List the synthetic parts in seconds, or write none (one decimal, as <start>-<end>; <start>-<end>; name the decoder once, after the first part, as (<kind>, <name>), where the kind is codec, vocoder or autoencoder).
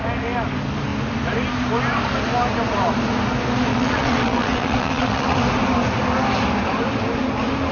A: 3.7-5.4 (vocoder, WaveNeXt)